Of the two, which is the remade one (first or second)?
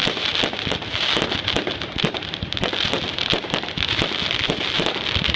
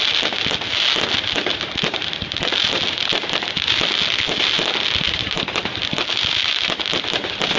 first